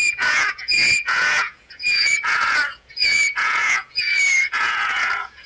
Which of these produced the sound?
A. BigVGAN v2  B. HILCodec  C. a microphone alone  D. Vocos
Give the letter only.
D